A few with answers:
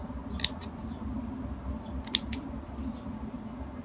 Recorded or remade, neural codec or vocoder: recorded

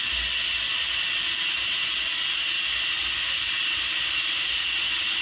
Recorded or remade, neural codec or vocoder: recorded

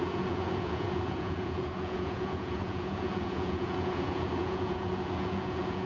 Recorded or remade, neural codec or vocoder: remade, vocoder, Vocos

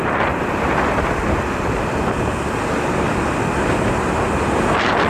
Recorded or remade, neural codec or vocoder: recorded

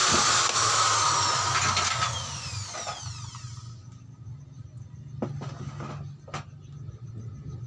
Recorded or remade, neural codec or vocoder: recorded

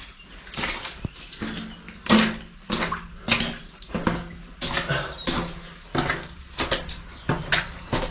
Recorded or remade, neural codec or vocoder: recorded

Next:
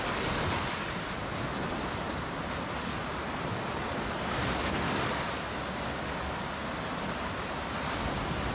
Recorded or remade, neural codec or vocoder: recorded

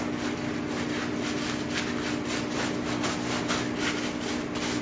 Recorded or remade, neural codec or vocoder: recorded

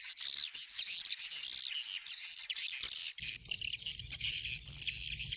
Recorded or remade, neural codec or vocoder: recorded